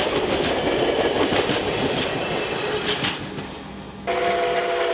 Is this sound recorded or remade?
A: recorded